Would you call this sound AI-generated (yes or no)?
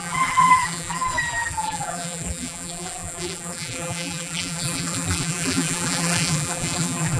yes